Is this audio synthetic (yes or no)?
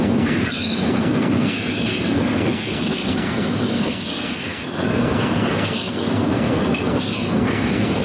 yes